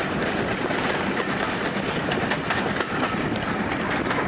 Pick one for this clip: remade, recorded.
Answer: recorded